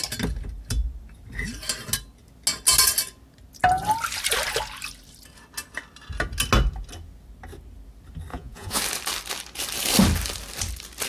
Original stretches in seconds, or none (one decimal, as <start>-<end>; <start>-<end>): 0.0-8.3; 8.8-11.1